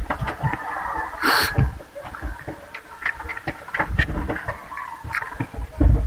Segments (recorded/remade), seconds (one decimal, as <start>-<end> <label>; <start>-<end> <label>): 0.0-2.0 remade; 2.0-3.3 recorded; 3.3-4.0 remade; 4.0-6.1 recorded